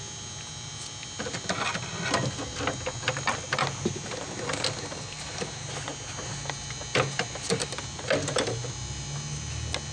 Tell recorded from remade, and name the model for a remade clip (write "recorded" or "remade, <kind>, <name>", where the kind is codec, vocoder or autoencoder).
recorded